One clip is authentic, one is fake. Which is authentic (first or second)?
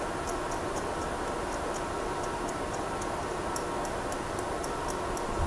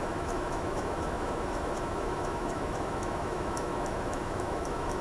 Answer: first